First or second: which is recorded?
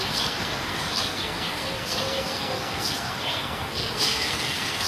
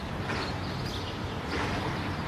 second